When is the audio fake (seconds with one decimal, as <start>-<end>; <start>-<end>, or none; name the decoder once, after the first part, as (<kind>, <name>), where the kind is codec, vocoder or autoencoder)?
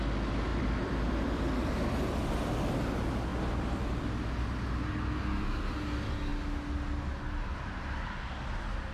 0.5-1.9 (vocoder, BigVGAN v2); 3.3-4.3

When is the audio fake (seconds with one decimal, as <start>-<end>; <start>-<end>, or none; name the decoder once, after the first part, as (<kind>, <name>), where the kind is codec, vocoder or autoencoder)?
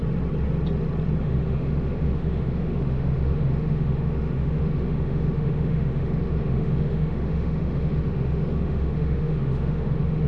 1.2-10.3 (autoencoder, DAC-VAE)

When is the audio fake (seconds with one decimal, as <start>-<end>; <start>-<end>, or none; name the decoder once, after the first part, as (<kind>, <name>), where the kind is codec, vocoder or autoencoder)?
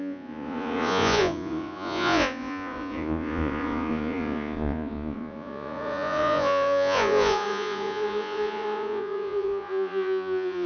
0.0-10.7 (vocoder, Vocos)